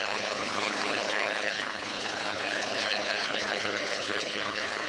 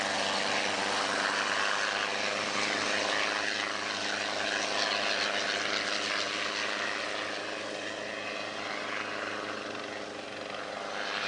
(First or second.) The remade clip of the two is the first